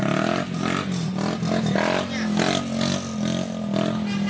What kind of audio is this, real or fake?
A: real